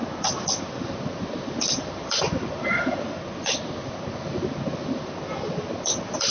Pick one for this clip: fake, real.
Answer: fake